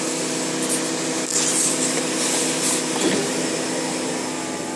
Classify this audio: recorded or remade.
recorded